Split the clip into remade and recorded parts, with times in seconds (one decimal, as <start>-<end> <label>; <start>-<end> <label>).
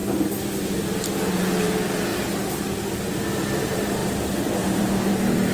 0.0-1.4 recorded; 1.4-2.1 remade; 2.1-3.1 recorded; 3.1-4.0 remade; 4.0-4.5 recorded; 4.5-5.5 remade